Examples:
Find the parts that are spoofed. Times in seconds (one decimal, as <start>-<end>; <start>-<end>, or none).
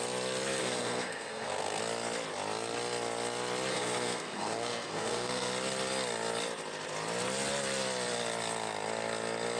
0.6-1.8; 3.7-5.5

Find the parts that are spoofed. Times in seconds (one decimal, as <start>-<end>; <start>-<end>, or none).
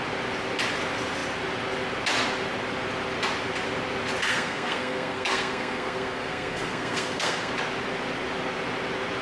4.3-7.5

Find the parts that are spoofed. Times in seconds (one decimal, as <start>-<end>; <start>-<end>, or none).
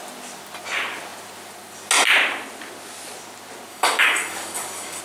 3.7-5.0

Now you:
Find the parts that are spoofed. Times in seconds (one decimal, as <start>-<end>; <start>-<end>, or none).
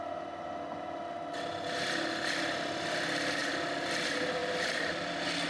none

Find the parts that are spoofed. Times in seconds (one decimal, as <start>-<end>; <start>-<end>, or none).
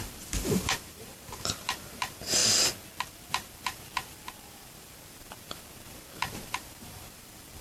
0.0-2.4; 3.1-7.6